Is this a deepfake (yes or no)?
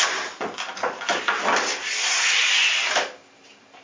no